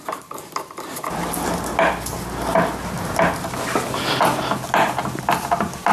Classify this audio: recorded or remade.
recorded